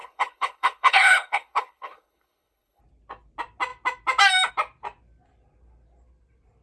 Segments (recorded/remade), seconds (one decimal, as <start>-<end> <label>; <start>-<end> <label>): 0.0-2.8 remade; 2.8-6.6 recorded